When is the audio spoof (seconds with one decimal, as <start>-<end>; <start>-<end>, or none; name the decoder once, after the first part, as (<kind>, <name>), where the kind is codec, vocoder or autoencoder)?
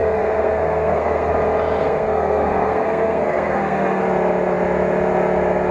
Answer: 0.0-1.3 (codec, SNAC); 1.8-4.0